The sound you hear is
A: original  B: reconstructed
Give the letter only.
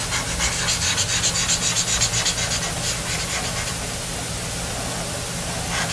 A